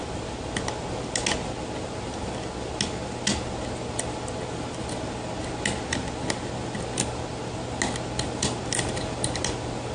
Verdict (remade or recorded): recorded